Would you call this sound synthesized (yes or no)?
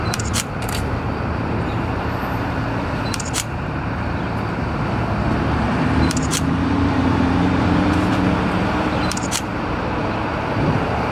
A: yes